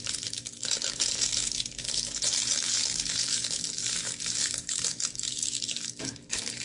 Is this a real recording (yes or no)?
no